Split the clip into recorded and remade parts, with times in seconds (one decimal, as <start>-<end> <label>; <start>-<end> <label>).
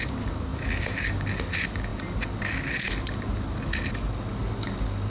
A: 0.0-5.1 recorded